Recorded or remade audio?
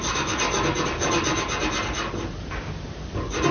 recorded